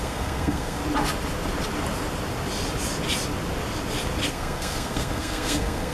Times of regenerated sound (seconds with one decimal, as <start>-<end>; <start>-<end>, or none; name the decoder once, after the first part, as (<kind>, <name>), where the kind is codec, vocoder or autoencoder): 0.0-0.8 (codec, SNAC); 4.3-5.9